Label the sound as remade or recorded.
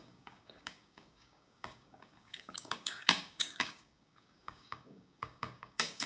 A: remade